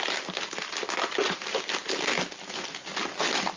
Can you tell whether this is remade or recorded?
recorded